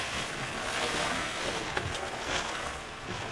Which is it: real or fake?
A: fake